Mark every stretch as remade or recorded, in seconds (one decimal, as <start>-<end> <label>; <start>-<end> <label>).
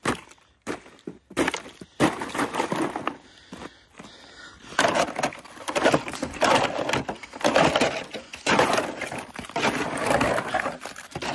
0.0-8.1 recorded; 8.1-8.8 remade; 8.8-11.3 recorded